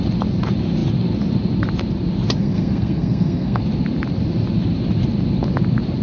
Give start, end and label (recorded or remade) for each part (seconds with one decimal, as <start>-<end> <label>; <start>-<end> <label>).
0.0-2.4 recorded; 2.4-3.6 remade; 3.6-6.0 recorded